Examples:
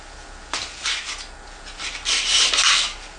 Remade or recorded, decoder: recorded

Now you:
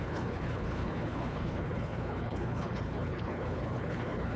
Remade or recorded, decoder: remade, codec, HILCodec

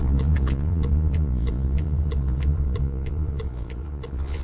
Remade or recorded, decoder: remade, vocoder, Vocos